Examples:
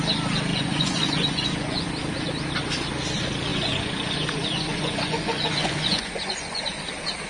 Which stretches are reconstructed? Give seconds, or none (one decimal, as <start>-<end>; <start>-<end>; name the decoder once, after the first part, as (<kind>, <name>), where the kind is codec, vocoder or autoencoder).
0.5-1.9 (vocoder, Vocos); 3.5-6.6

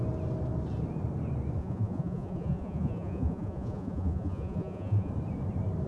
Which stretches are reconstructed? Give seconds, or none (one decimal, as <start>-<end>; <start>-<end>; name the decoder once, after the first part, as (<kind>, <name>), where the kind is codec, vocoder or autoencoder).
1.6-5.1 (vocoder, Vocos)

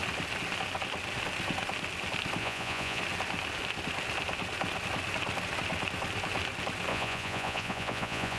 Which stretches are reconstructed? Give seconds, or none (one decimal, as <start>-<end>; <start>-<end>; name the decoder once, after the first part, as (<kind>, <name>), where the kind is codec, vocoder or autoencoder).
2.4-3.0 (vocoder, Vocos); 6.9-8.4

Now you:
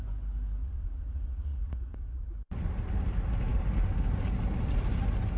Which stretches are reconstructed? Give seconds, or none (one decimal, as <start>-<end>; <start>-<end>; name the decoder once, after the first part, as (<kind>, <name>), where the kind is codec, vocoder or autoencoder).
0.6-2.3 (vocoder, Vocos)